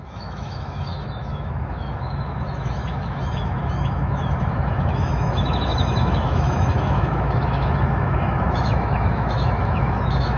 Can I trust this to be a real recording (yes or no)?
no